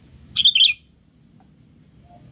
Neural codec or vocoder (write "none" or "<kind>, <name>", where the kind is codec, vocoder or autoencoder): none